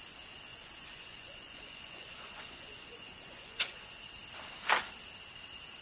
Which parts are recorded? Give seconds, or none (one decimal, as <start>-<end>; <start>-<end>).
0.0-0.5; 4.0-5.8

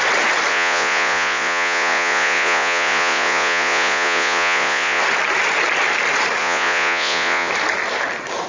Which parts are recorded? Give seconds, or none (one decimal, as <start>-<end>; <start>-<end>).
0.0-0.5; 5.0-6.4; 7.5-8.5

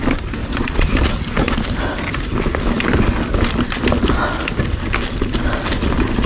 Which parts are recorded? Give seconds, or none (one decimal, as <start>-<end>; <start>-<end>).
0.0-0.4; 0.9-6.3

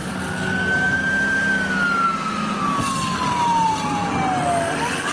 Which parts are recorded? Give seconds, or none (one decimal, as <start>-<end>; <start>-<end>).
0.0-5.1

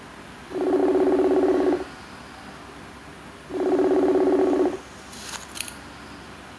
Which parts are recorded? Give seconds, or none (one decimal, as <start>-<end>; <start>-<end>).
0.0-6.6

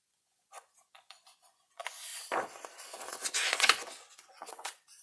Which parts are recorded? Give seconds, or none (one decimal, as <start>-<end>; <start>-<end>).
2.1-3.1